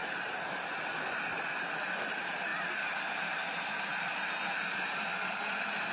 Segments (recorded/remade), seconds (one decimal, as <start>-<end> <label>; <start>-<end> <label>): 0.0-0.5 recorded; 0.5-2.5 remade; 2.5-3.3 recorded; 3.3-5.1 remade; 5.1-5.9 recorded